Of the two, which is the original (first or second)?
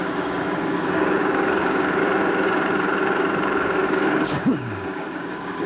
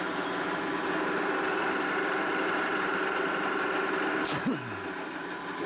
second